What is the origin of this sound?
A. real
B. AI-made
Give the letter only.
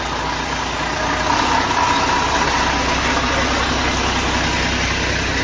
A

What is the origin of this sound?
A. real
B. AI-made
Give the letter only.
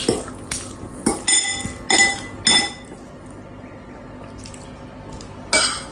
A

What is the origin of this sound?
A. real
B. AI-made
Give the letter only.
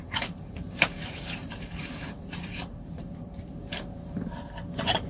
B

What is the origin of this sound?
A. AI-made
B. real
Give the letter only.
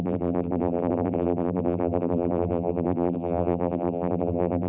A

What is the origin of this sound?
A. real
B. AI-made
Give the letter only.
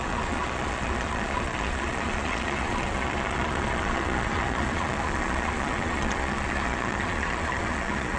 B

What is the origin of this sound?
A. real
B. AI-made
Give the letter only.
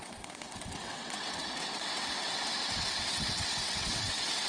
B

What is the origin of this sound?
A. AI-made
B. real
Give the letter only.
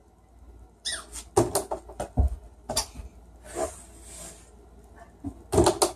B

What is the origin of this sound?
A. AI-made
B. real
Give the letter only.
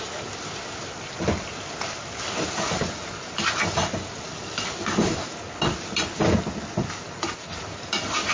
B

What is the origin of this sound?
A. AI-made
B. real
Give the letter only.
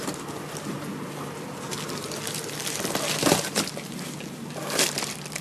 A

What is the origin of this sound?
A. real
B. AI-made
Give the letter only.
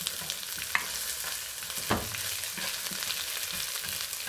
A